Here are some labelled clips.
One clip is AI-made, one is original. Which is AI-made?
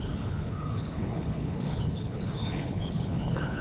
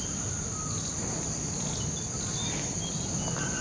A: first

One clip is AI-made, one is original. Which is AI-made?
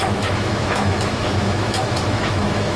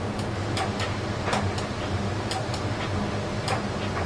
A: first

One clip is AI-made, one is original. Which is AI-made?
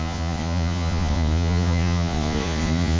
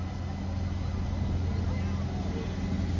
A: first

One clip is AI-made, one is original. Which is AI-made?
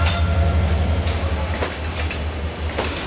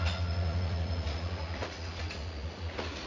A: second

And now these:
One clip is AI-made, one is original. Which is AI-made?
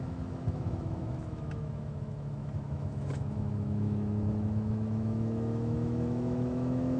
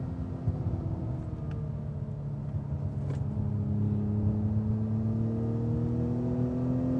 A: first